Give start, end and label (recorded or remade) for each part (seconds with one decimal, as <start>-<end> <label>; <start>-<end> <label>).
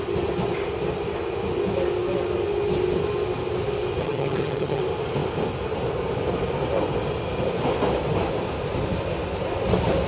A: 0.0-4.0 recorded; 4.0-4.8 remade; 4.8-10.1 recorded